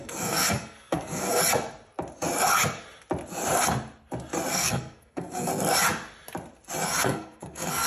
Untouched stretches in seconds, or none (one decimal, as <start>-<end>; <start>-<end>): 1.4-4.5; 5.5-7.0